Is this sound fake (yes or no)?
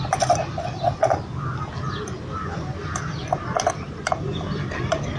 no